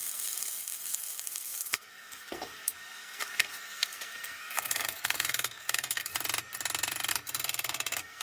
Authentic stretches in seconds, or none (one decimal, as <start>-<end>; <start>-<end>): 6.1-7.1

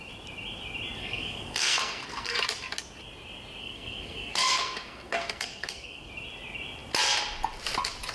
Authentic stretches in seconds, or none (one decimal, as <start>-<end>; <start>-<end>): 0.0-1.0; 2.4-3.6; 6.1-8.1

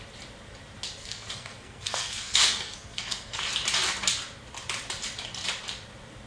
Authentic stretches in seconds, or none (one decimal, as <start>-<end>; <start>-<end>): 0.0-1.0; 3.4-6.3

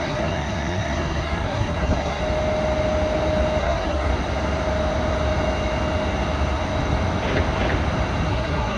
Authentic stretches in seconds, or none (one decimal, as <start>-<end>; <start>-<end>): 2.2-3.6; 4.1-8.3

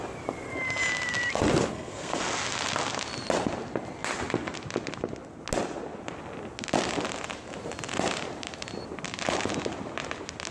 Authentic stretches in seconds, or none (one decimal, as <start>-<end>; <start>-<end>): 0.0-1.7; 2.2-10.5

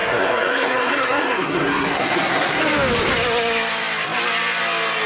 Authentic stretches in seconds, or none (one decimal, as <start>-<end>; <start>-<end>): 2.6-5.1